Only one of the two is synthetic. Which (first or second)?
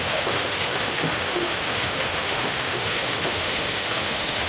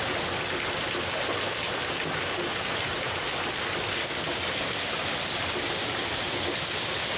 first